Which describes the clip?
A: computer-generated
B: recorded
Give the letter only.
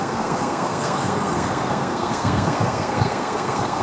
A